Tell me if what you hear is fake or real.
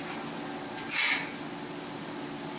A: real